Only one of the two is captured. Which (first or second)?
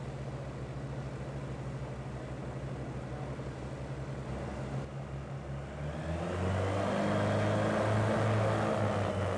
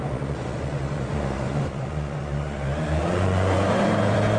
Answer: first